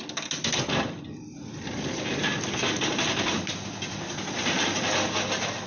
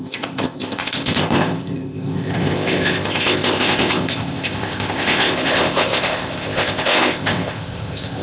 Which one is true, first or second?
first